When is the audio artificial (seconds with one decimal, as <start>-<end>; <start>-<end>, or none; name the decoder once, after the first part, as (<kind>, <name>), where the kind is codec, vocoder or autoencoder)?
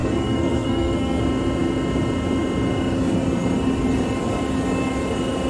0.0-1.2 (codec, SNAC)